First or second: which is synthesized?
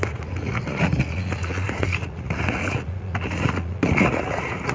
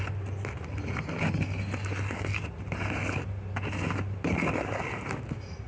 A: first